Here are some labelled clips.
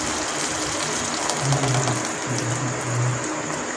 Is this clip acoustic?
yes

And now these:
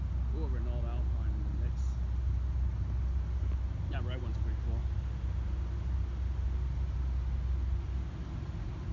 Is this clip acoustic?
yes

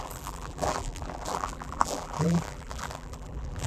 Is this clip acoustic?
no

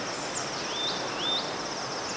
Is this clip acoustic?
yes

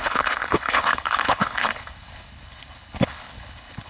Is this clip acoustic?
no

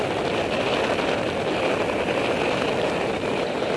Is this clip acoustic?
yes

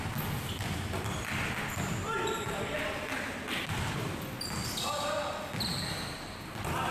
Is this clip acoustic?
yes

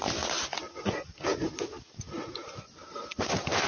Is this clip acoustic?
yes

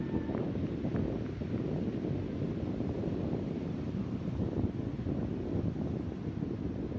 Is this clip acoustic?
yes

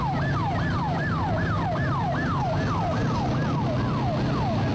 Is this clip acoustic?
yes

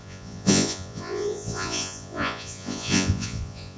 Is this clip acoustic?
no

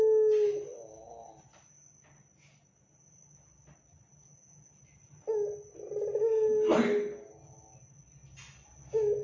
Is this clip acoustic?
yes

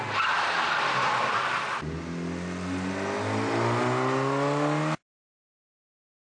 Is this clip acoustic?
yes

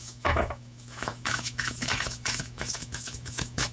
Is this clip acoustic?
no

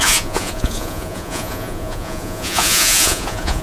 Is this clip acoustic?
no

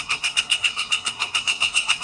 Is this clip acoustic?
no